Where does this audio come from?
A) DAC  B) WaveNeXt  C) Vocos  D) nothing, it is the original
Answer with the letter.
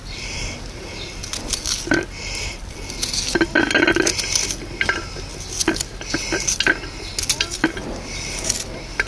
D